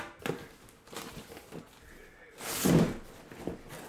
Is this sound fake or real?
real